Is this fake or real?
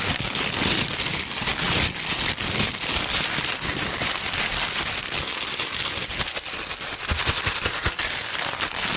real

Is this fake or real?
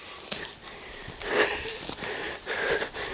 real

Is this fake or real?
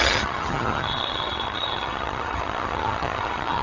fake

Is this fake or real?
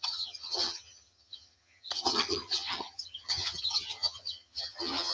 fake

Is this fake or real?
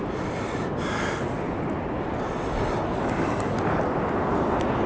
real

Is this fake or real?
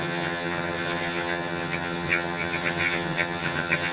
fake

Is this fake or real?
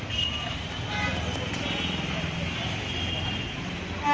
real